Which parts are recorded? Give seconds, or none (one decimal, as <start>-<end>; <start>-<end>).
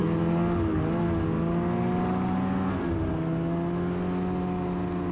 0.0-5.1